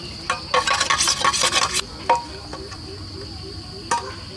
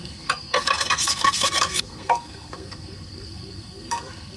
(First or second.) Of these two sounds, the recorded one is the first